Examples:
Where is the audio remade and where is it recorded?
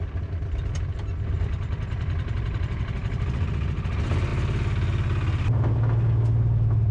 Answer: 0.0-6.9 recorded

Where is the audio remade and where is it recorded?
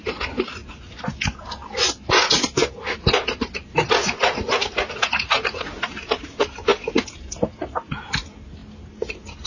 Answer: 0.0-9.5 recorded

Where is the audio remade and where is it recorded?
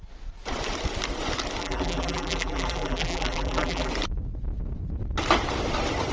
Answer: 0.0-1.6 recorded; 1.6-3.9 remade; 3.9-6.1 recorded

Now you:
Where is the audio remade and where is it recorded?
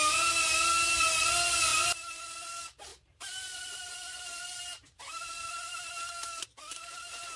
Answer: 0.0-1.7 recorded; 1.7-2.2 remade; 2.2-2.9 recorded; 2.9-6.8 remade; 6.8-7.4 recorded